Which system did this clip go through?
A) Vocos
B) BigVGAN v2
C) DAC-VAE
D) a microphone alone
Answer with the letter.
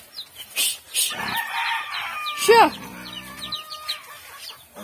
D